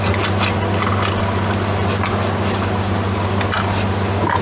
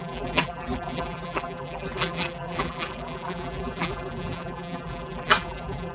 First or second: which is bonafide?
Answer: first